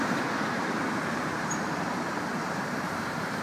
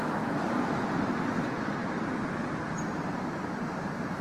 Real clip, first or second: second